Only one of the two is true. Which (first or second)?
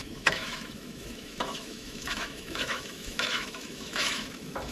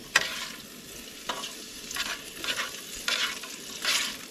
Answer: second